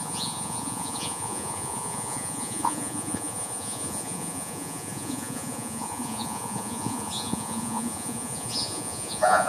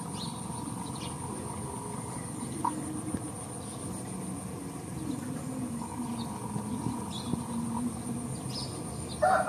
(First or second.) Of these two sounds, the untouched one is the second